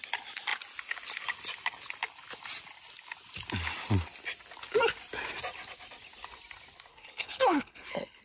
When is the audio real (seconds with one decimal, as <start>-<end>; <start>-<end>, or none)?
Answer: 0.0-6.9